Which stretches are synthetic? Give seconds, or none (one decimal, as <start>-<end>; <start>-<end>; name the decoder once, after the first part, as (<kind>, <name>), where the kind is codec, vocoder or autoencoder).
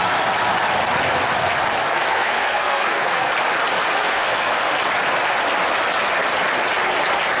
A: 1.8-3.3 (codec, SNAC); 3.9-4.7